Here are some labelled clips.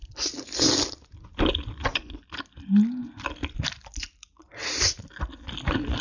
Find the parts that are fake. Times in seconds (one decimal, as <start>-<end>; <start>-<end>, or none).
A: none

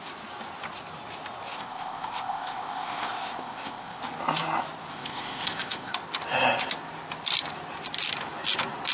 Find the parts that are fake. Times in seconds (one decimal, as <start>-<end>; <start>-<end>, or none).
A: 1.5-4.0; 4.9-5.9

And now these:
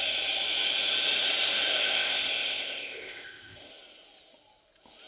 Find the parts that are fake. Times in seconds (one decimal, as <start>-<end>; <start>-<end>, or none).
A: 1.7-3.7

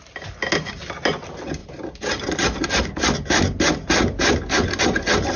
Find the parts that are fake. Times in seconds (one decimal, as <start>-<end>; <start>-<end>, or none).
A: none

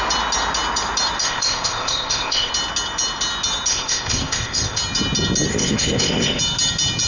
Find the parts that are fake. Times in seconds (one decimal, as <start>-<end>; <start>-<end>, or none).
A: 1.2-2.5; 3.7-4.8; 5.5-6.4

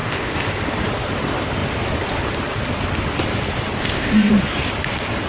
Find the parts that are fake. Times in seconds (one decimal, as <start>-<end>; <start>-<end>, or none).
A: 0.0-0.5; 3.8-4.3